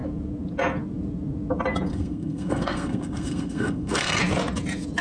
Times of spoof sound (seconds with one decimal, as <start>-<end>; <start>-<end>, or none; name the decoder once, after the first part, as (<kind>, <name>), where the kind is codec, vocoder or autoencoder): 1.9-4.2 (codec, SNAC)